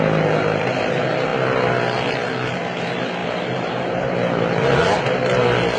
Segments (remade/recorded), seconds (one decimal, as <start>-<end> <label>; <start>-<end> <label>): 0.0-3.2 recorded; 3.2-3.9 remade; 3.9-5.8 recorded